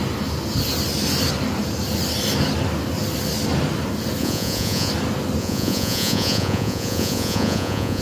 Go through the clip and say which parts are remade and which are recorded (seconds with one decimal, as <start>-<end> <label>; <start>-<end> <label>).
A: 0.0-4.2 recorded; 4.2-4.9 remade; 4.9-5.4 recorded; 5.4-8.0 remade

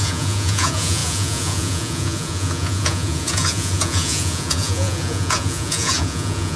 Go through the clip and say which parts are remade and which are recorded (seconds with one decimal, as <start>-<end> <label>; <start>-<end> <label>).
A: 0.0-6.6 remade

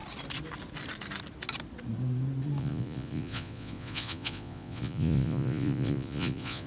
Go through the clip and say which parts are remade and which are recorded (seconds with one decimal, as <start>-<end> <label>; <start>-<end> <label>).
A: 0.0-2.6 recorded; 2.6-6.7 remade

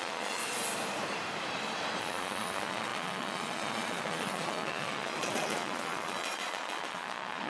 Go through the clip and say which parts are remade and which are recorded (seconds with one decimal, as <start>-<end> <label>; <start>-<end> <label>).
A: 0.0-0.4 remade; 0.4-2.0 recorded; 2.0-7.5 remade

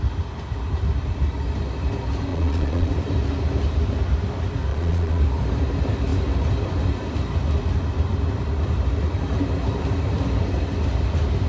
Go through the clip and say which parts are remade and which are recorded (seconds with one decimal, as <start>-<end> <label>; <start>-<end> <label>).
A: 0.0-2.3 recorded; 2.3-2.9 remade; 2.9-4.7 recorded; 4.7-5.2 remade; 5.2-11.5 recorded

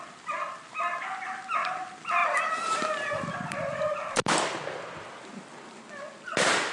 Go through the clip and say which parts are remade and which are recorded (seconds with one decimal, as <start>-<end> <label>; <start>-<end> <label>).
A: 0.0-6.7 recorded

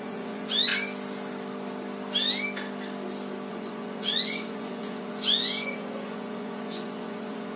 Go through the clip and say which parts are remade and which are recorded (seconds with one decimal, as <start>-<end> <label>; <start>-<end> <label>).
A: 0.0-0.7 remade; 0.7-3.5 recorded; 3.5-7.6 remade